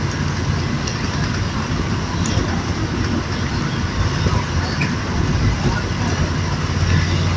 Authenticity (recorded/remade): recorded